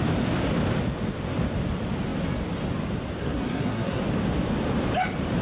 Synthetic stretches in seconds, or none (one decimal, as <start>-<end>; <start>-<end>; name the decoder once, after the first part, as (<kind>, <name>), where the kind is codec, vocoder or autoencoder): 3.2-4.0 (codec, SNAC)